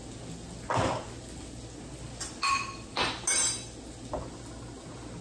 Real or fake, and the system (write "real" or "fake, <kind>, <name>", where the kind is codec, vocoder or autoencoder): real